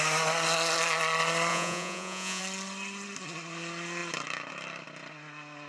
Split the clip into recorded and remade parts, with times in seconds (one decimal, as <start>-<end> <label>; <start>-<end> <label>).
0.0-1.5 recorded; 1.5-2.4 remade; 2.4-5.7 recorded